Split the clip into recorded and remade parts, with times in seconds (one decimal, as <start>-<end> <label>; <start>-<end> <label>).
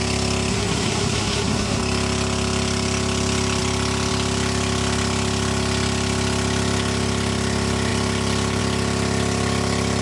0.0-0.5 recorded; 0.5-1.8 remade; 1.8-10.0 recorded